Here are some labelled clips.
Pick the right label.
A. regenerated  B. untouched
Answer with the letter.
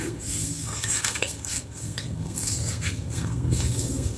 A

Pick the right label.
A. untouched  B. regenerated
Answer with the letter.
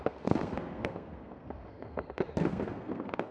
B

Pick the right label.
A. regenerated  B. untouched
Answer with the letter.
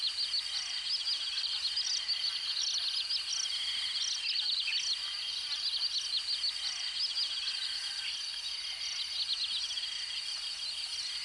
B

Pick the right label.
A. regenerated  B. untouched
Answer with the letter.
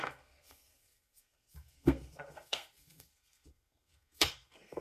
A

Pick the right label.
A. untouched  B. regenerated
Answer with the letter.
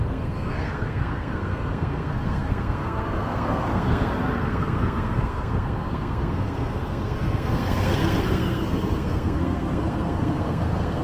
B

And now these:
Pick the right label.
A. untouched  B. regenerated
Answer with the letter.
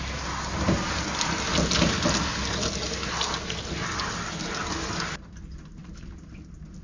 A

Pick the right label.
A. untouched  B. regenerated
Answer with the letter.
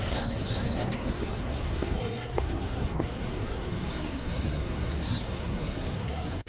B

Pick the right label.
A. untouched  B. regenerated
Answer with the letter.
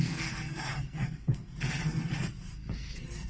B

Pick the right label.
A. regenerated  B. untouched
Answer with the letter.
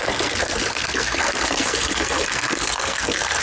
A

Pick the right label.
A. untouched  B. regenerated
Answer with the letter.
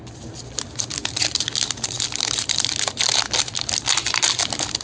A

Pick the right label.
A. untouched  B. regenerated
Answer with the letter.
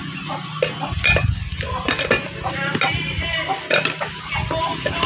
A